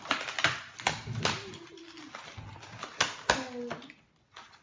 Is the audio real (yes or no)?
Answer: yes